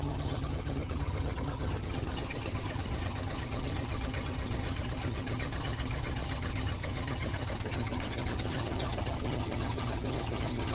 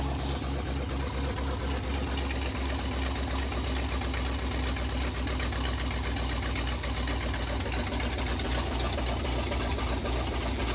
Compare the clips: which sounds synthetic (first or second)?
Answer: first